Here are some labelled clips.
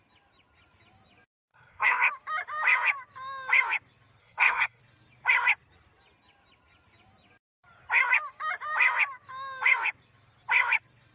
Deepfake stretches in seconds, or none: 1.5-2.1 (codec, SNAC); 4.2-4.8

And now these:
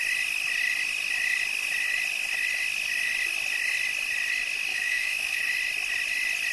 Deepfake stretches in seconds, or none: 4.7-5.4 (autoencoder, DAC-VAE)

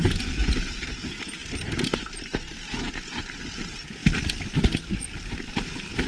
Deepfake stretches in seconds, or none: 0.0-4.0 (vocoder, BigVGAN v2); 5.5-6.1

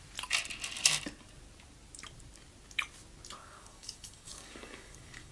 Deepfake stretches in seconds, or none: 3.4-5.3 (codec, DAC)

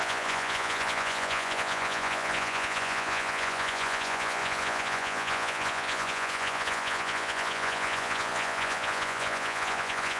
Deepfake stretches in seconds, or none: 0.0-10.2 (vocoder, Vocos)